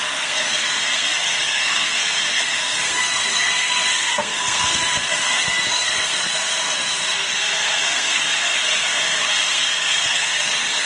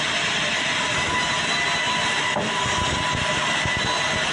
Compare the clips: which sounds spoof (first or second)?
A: first